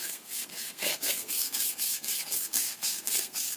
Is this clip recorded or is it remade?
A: remade